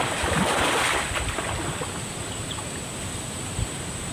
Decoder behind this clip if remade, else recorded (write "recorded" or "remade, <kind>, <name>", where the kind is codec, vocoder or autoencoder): recorded